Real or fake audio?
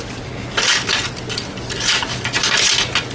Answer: real